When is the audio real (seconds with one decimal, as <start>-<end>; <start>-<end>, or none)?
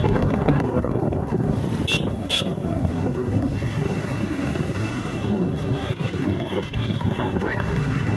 1.6-2.1